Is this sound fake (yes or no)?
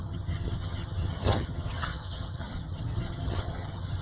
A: yes